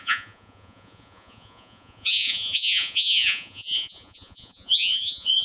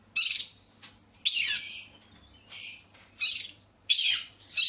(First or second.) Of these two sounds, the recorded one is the second